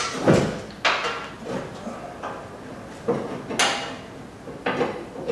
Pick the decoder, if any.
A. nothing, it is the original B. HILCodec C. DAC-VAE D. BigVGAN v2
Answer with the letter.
A